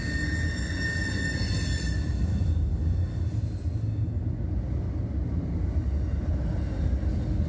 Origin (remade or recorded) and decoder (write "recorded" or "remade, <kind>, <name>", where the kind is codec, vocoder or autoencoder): recorded